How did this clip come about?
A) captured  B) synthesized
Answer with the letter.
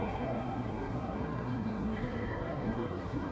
B